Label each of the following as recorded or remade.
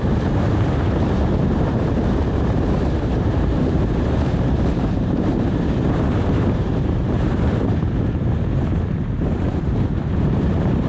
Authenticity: remade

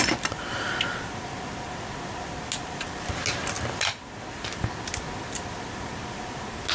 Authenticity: recorded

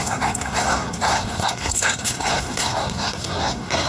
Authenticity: remade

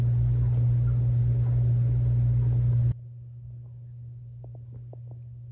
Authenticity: recorded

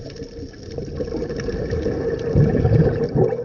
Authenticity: recorded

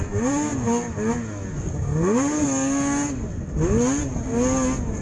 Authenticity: recorded